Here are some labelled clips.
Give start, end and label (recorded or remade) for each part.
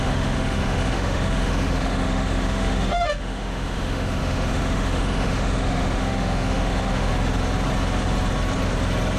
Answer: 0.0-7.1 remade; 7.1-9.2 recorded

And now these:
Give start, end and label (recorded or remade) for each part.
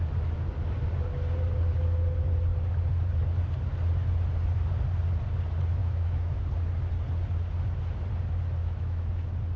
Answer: 0.0-5.8 recorded; 5.8-6.4 remade; 6.4-8.6 recorded; 8.6-9.1 remade; 9.1-9.6 recorded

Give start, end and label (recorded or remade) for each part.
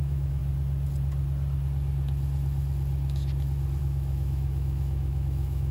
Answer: 0.0-0.4 remade; 0.4-3.8 recorded; 3.8-5.7 remade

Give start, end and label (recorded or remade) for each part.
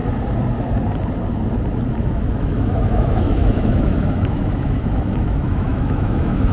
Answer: 0.0-2.4 recorded; 2.4-6.5 remade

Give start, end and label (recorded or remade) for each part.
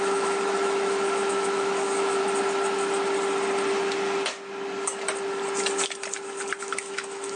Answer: 0.0-2.2 remade; 2.2-6.6 recorded; 6.6-7.4 remade